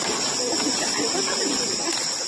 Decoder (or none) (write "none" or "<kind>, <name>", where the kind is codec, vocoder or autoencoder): none